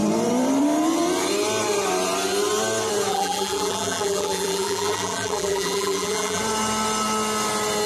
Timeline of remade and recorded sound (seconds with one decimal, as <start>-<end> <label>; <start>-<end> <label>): 0.0-3.1 recorded; 3.1-6.4 remade; 6.4-7.9 recorded